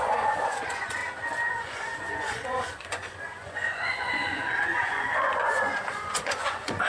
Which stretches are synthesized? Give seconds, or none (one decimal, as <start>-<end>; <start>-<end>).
0.0-1.0; 1.5-6.9

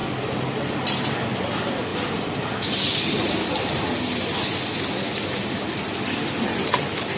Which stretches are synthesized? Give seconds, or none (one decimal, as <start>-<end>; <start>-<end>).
none